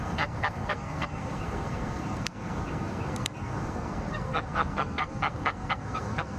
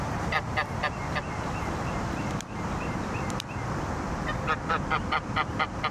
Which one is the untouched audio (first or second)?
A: second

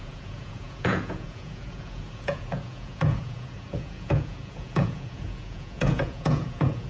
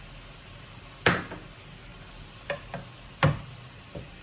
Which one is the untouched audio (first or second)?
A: second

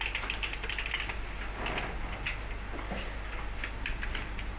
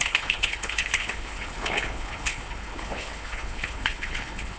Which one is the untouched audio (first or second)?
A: first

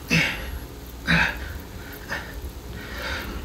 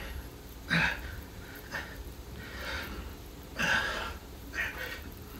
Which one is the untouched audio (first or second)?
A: first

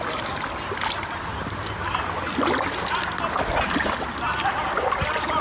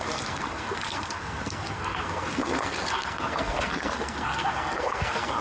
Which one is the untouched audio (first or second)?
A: first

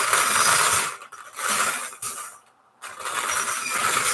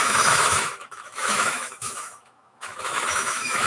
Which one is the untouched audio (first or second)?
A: first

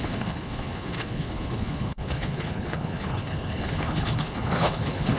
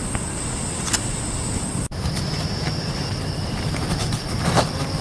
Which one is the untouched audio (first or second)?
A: second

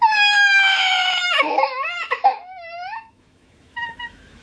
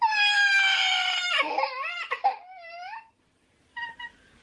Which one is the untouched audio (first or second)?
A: second